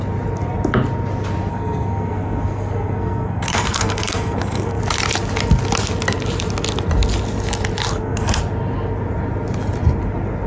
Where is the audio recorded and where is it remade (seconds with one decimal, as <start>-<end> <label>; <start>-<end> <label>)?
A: 0.0-1.5 recorded; 1.5-4.8 remade; 4.8-7.9 recorded; 7.9-8.4 remade; 8.4-10.5 recorded